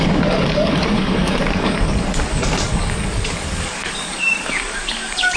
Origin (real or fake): fake